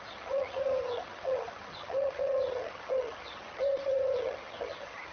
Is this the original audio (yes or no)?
no